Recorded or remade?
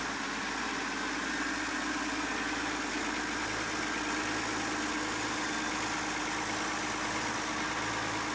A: recorded